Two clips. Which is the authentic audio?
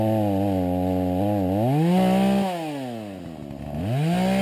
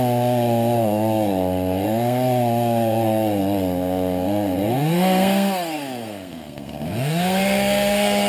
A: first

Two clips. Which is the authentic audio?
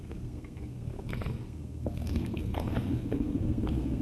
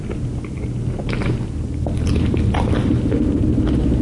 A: second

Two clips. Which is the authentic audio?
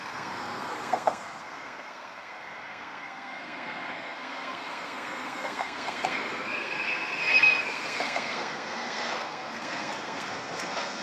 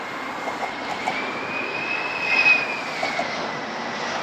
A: second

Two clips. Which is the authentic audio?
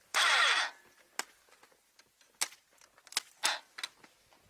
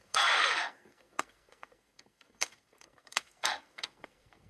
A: first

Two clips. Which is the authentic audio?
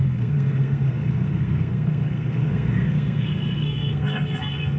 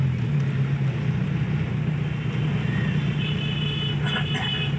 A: second